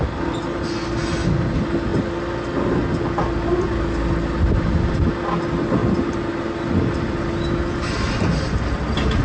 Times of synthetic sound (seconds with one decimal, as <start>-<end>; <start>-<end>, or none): none